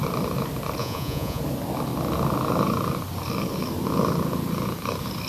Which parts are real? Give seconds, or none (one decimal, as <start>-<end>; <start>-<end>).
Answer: 0.0-0.8; 1.4-5.3